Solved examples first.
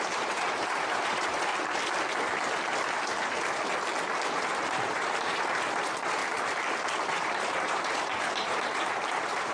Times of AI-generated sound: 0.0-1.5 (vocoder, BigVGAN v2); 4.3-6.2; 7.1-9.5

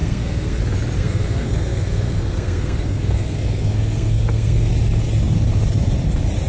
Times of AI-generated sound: 0.0-0.6 (codec, SNAC); 1.0-4.7

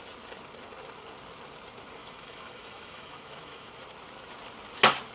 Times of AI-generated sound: 2.0-3.7 (autoencoder, DAC-VAE)

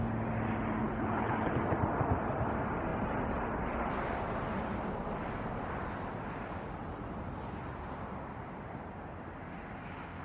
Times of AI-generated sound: 0.8-1.5 (codec, HILCodec)

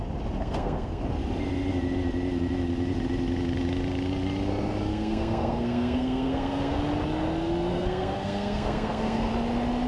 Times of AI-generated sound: 0.4-1.0 (codec, SNAC); 4.9-6.8; 7.7-9.3

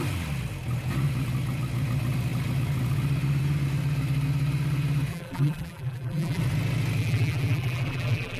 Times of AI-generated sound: 5.1-6.4 (vocoder, BigVGAN v2); 7.0-8.4

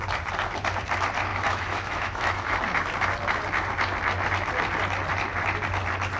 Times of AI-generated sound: 1.3-2.6 (autoencoder, DAC-VAE)

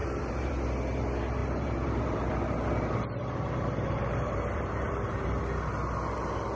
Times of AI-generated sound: 0.0-0.5 (vocoder, BigVGAN v2); 1.4-5.4